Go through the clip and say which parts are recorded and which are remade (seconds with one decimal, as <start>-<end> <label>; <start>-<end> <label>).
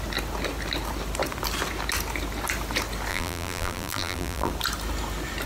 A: 0.0-3.1 recorded; 3.1-4.5 remade; 4.5-5.5 recorded